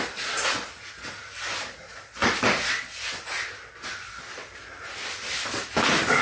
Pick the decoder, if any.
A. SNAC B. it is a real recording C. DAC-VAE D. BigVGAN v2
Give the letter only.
B